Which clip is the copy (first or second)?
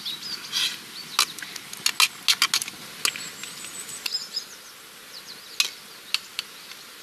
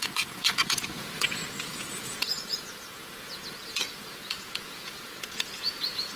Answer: second